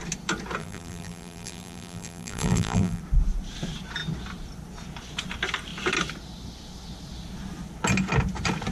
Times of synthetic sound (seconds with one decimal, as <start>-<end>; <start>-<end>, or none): 0.6-3.0